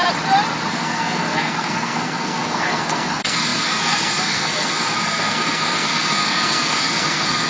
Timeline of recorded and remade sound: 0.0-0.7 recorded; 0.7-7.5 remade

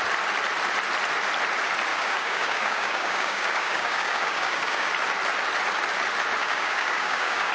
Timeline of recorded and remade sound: 0.0-1.9 recorded; 1.9-4.9 remade; 4.9-6.4 recorded; 6.4-7.5 remade

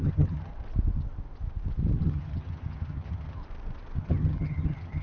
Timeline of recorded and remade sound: 0.0-0.5 remade; 0.5-2.0 recorded; 2.0-3.4 remade; 3.4-4.0 recorded; 4.0-5.0 remade

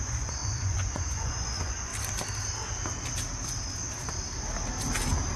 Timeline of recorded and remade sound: 0.0-1.9 remade; 1.9-5.4 recorded

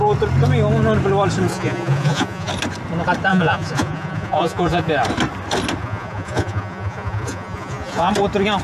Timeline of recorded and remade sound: 0.0-1.5 recorded; 1.5-2.5 remade; 2.5-3.3 recorded; 3.3-4.9 remade; 4.9-5.8 recorded; 5.8-8.1 remade; 8.1-8.6 recorded

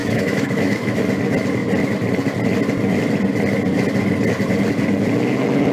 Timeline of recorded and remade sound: 0.0-1.0 remade; 1.0-5.7 recorded

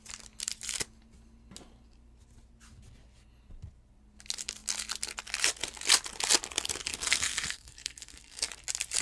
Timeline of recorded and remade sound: 0.0-6.9 recorded; 6.9-8.5 remade; 8.5-9.0 recorded

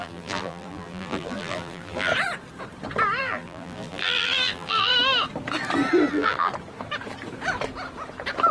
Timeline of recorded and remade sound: 0.0-2.1 remade; 2.1-3.2 recorded; 3.2-4.9 remade; 4.9-6.1 recorded; 6.1-6.5 remade; 6.5-8.5 recorded